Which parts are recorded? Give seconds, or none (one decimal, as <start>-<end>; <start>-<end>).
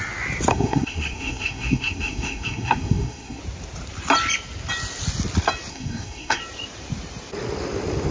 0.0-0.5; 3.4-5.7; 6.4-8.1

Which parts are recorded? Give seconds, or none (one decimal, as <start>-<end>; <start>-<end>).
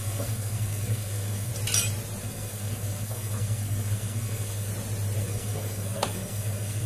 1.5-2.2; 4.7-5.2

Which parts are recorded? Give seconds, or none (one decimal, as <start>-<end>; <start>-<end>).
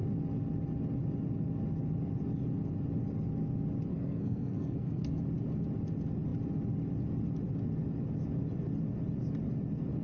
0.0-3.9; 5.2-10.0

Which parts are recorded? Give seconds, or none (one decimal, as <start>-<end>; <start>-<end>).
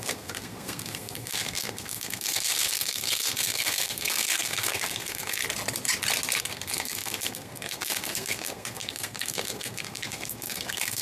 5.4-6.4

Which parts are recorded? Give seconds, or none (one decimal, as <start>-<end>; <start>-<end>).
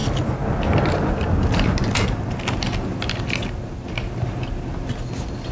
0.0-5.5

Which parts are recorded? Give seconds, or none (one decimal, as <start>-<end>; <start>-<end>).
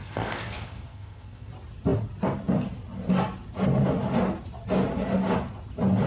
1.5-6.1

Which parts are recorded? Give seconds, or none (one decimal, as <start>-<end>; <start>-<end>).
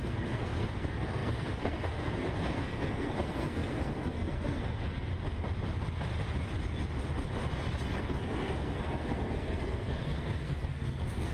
5.1-8.0